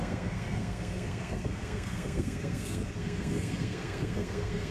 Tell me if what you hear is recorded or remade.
remade